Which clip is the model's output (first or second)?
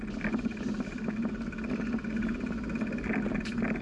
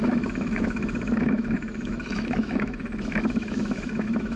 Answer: second